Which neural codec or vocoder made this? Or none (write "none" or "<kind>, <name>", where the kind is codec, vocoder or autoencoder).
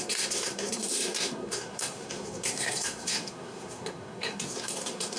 codec, SNAC